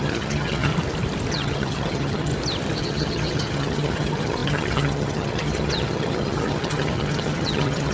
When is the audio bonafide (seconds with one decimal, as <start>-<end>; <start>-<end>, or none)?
0.7-1.3; 2.3-2.8